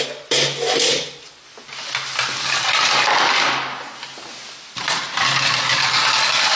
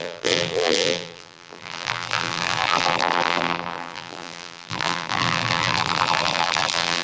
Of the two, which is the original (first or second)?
first